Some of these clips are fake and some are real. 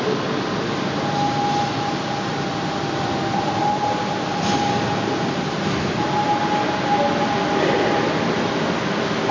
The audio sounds real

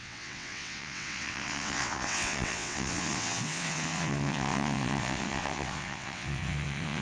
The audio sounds fake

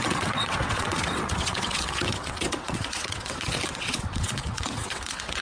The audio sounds fake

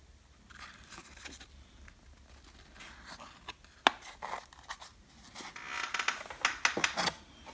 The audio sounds real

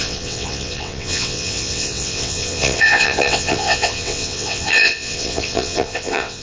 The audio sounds fake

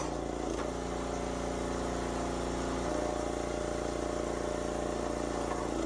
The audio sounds real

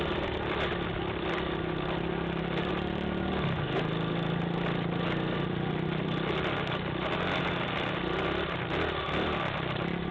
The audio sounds real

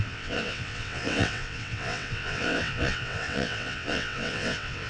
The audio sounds fake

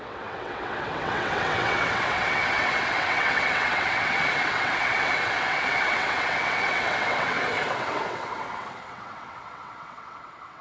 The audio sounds fake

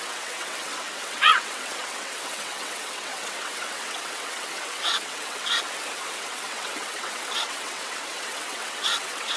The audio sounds fake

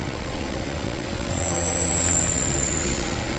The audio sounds fake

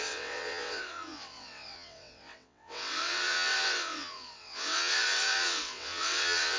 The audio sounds fake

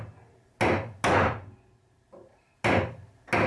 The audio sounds real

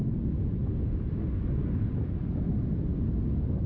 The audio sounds real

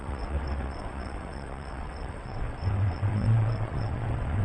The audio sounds fake